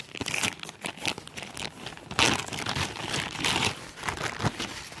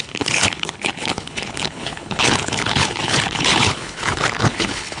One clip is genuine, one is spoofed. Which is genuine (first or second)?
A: first